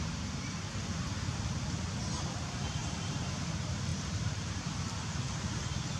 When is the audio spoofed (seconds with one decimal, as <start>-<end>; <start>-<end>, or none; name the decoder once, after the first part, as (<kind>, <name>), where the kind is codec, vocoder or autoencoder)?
2.8-3.5 (vocoder, BigVGAN v2); 3.9-5.5